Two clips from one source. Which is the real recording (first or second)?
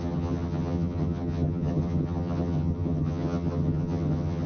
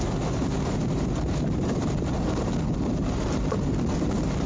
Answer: second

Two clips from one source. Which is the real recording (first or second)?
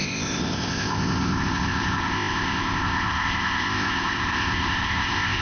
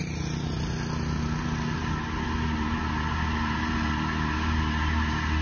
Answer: second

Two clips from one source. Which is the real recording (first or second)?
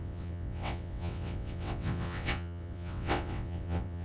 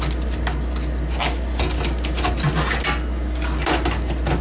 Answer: second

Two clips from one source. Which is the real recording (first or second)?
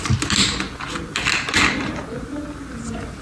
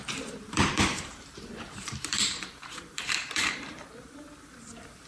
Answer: first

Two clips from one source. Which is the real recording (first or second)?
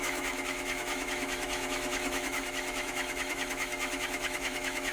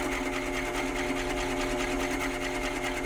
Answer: second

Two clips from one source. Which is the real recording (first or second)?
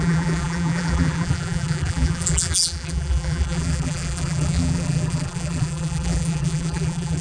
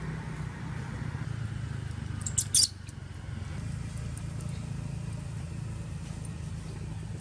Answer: second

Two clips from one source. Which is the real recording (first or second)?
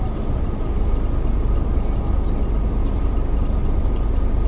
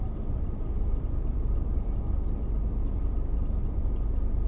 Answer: first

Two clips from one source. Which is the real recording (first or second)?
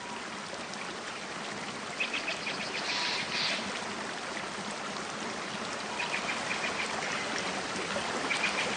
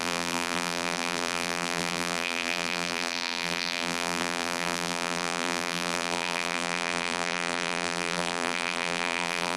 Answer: first